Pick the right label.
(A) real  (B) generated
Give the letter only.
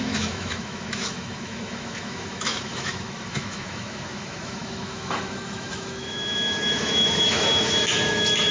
B